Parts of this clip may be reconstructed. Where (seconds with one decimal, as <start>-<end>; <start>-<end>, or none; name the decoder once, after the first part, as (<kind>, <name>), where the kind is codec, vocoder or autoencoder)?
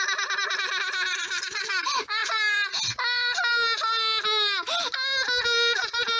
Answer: none